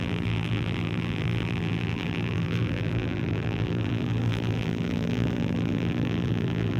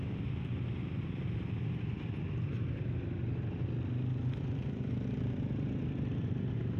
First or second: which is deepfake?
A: first